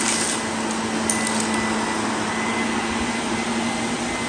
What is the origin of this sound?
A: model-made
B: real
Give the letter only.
B